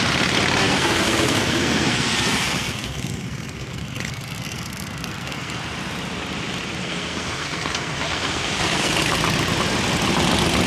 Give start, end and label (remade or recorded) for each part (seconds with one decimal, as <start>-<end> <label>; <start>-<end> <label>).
0.0-0.6 recorded; 0.6-5.6 remade; 5.6-6.8 recorded; 6.8-8.9 remade; 8.9-10.7 recorded